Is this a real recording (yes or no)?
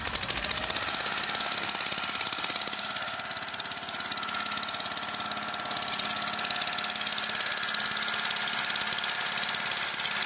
yes